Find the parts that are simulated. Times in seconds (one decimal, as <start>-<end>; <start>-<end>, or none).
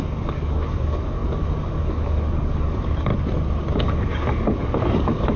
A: 0.0-3.1; 3.7-5.4